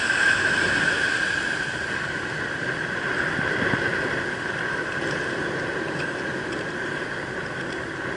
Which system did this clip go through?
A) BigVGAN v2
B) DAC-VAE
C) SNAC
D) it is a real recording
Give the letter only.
D